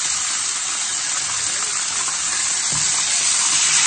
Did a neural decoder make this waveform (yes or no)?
no